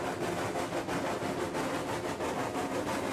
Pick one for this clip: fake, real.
real